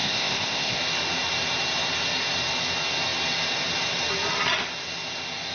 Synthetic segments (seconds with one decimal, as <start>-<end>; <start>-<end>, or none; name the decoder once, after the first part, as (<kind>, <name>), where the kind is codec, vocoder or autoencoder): 0.0-0.8 (codec, ZipCodec)